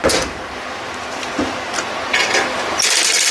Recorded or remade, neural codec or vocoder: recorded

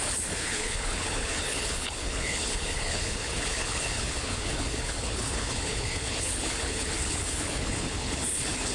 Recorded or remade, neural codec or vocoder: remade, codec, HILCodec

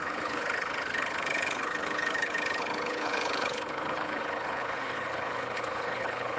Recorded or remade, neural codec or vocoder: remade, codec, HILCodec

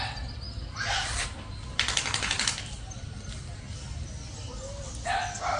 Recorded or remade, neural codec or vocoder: recorded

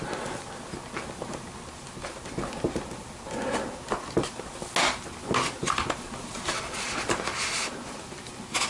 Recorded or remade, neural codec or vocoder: recorded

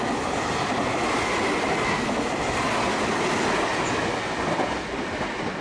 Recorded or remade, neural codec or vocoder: recorded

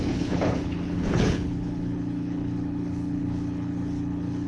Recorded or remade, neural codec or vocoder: remade, codec, HILCodec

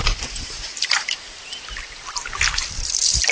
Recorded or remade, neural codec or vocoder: recorded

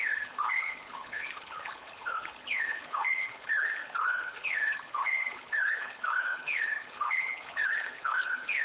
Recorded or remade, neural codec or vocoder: remade, codec, HILCodec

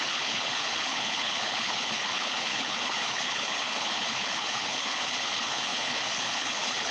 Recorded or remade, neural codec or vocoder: remade, codec, HILCodec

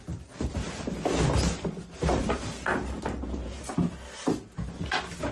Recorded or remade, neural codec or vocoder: recorded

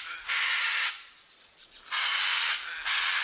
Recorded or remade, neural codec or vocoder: recorded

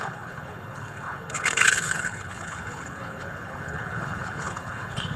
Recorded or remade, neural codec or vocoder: remade, codec, HILCodec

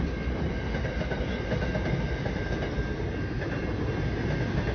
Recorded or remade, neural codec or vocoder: recorded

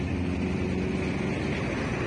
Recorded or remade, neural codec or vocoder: recorded